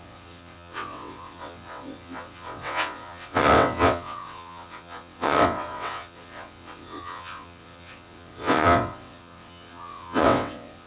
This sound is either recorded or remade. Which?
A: remade